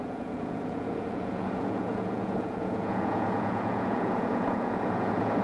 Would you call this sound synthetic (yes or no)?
yes